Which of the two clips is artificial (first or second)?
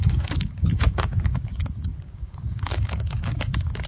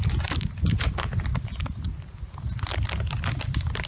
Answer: first